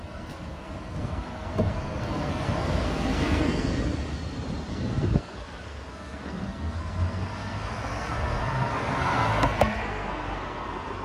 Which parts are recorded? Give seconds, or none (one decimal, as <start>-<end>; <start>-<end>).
3.8-4.7